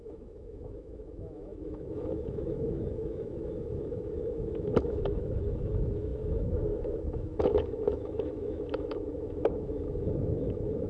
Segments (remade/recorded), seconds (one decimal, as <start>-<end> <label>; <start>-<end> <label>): 0.0-10.9 remade